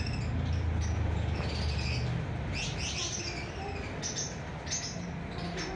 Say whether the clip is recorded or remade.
recorded